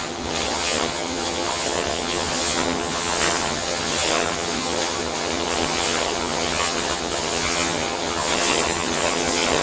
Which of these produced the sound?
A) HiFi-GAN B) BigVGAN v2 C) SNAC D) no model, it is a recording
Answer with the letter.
A